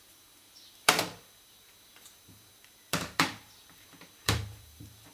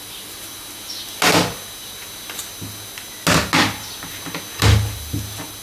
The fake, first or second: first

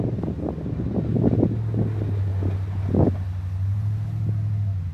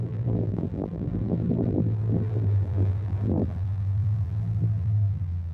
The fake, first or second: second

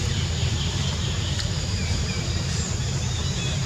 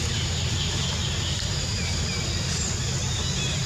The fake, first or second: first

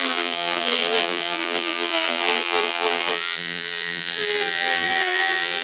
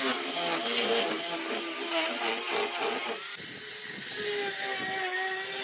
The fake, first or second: first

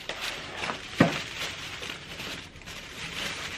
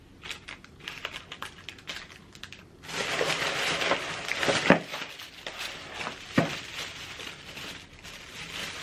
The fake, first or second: first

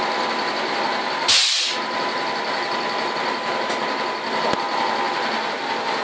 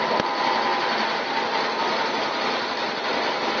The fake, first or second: second